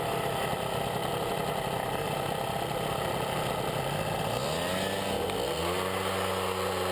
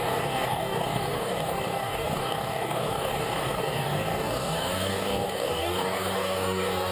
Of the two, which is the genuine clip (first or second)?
first